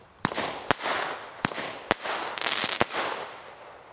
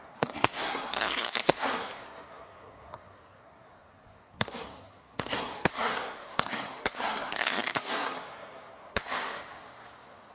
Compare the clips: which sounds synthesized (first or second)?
second